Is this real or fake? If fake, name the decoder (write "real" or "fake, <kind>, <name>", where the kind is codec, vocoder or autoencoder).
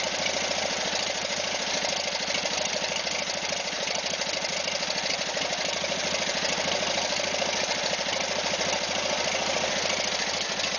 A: real